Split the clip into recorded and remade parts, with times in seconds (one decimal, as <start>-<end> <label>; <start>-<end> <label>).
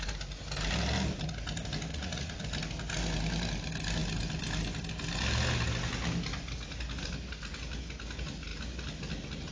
0.0-1.9 recorded; 1.9-2.4 remade; 2.4-9.5 recorded